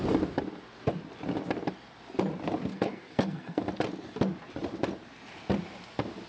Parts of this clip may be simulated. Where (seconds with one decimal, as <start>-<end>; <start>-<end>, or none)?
2.7-3.6